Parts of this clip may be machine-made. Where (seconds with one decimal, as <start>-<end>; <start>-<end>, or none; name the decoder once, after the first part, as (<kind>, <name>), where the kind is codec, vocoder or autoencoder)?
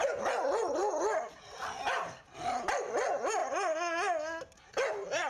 none